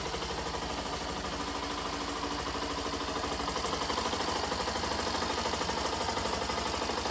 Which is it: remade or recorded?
recorded